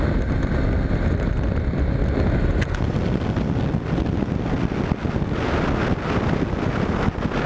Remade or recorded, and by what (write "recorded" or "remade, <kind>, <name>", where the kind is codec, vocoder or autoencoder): recorded